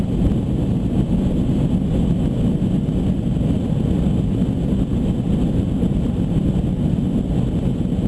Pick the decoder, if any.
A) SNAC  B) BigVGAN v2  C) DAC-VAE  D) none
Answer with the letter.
D